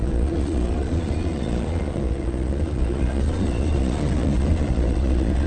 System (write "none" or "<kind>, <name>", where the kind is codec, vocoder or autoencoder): vocoder, Vocos